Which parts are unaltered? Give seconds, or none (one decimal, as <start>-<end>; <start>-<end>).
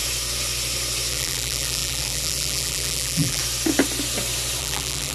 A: 0.0-1.1; 3.4-4.6